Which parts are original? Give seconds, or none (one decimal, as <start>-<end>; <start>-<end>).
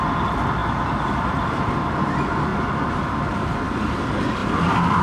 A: 0.0-0.6; 2.1-2.5; 3.0-5.0